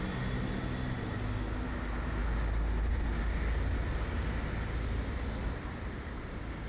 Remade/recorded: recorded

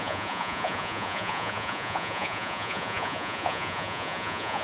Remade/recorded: remade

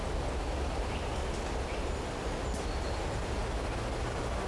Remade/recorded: recorded